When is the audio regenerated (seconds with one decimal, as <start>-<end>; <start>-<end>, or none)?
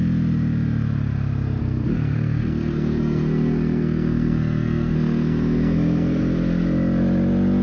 1.6-6.2